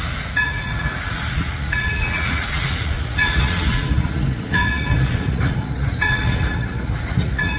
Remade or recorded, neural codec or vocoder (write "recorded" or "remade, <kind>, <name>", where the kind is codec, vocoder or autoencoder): remade, vocoder, Vocos